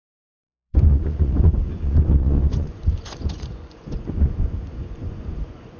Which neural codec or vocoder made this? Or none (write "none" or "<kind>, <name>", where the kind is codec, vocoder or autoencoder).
vocoder, Vocos